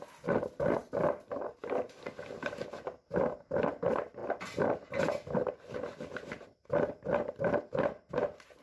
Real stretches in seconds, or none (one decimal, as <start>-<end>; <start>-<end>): 0.0-8.6